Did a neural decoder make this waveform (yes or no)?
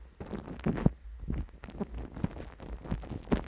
no